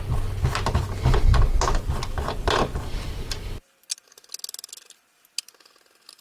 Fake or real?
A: real